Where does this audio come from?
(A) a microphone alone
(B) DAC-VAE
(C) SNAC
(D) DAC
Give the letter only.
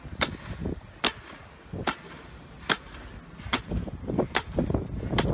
A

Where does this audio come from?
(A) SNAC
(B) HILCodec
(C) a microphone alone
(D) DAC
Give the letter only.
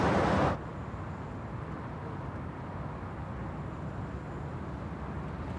C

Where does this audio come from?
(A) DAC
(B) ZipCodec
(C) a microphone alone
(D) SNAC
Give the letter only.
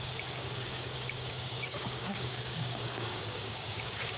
A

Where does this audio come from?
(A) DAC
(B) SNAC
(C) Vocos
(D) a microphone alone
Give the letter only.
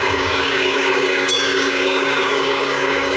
A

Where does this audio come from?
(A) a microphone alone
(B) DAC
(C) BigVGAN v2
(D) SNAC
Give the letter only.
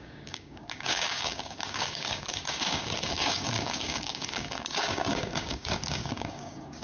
B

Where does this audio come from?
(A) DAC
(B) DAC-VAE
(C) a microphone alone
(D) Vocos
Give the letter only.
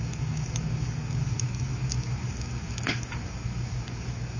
A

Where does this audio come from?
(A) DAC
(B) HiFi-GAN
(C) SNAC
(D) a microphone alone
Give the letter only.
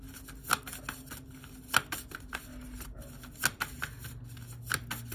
D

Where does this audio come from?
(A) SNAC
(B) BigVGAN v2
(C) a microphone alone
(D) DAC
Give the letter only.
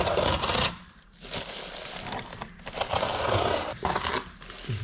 C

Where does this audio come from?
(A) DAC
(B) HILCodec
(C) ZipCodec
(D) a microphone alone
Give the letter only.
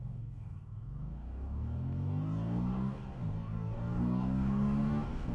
A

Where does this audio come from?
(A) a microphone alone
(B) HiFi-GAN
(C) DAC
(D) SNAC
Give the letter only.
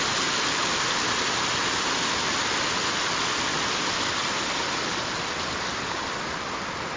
A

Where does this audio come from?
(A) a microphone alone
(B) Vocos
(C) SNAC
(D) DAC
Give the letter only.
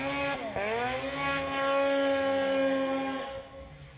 A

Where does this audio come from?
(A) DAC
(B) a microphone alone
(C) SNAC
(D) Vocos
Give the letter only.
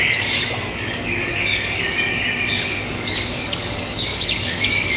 A